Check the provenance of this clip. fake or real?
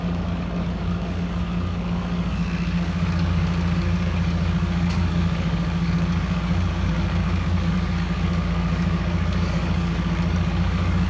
fake